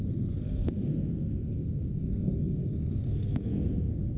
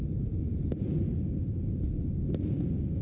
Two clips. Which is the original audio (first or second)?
second